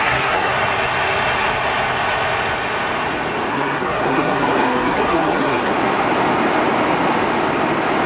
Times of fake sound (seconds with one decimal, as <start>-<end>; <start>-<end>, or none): 0.0-0.5; 3.5-5.7